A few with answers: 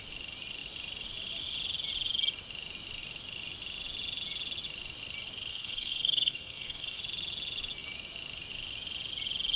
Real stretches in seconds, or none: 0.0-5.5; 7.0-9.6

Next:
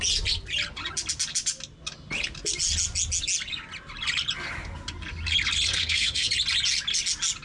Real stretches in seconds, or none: 0.0-5.7; 6.3-7.4